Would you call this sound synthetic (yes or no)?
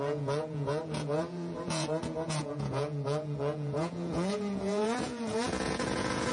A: yes